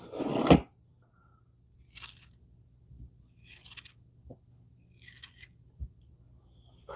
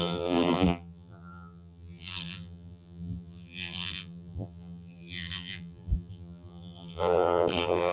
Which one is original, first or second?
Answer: first